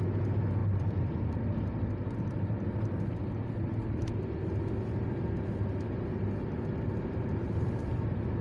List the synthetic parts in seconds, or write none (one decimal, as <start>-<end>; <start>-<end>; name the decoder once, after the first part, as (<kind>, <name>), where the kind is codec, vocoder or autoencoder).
0.6-2.2 (vocoder, BigVGAN v2)